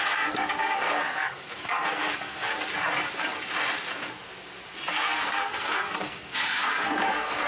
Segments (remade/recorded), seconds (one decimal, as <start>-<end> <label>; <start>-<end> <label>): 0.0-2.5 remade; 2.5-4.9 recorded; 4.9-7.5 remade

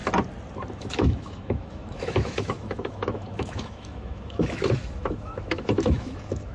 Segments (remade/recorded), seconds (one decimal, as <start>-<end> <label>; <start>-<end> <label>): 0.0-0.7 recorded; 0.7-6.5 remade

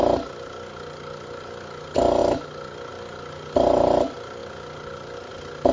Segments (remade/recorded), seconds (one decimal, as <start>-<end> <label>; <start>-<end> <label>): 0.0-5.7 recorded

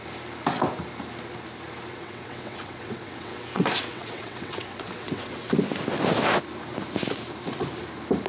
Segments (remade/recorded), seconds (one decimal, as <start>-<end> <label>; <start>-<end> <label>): 0.0-1.9 recorded; 1.9-5.5 remade; 5.5-8.3 recorded

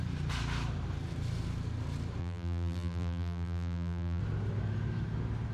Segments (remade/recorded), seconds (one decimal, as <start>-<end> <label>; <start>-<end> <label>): 0.0-2.2 recorded; 2.2-4.2 remade; 4.2-5.5 recorded

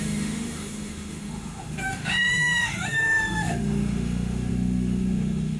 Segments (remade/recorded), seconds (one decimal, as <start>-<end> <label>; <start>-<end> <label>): 0.0-5.6 remade

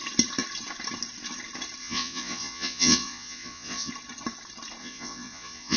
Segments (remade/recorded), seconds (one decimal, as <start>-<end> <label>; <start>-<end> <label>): 0.0-1.8 recorded; 1.8-3.9 remade; 3.9-4.8 recorded; 4.8-5.8 remade